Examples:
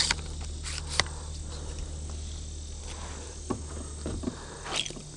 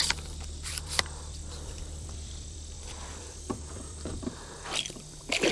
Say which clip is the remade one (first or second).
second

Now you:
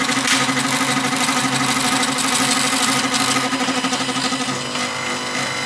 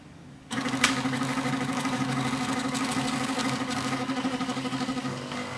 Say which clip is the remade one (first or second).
second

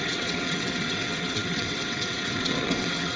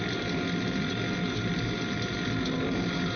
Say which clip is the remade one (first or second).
first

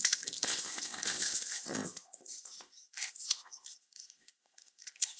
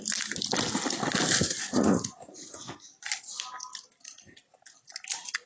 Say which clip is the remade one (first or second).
first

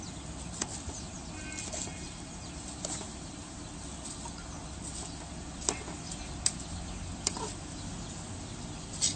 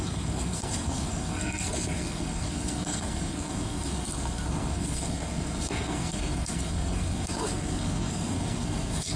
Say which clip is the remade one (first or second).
second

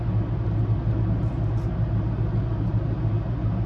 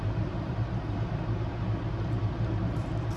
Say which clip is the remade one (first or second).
second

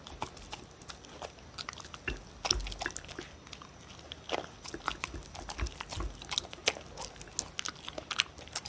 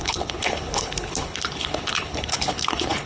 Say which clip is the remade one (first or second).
second